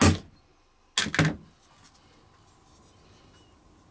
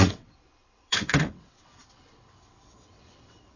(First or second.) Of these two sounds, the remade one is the second